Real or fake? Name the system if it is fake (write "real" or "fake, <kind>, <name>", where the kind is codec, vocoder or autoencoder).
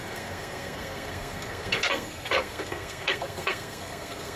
fake, codec, SNAC